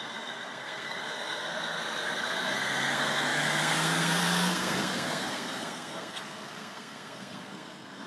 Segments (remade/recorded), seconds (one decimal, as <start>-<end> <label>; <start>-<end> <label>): 0.0-8.1 remade